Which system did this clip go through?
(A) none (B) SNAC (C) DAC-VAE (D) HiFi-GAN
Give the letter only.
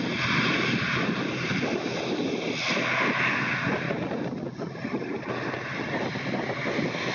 A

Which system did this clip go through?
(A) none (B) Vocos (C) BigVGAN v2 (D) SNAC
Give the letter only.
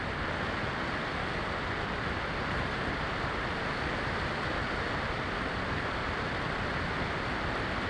A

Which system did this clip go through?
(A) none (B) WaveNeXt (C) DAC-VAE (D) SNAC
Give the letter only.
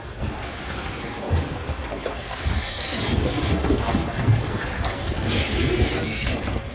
D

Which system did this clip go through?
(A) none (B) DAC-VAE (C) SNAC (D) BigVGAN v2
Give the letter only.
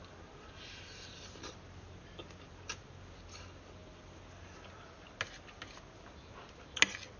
A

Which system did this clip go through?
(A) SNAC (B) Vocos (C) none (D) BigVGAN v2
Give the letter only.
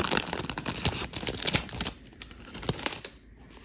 C